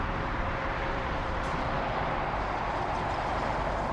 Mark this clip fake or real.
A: fake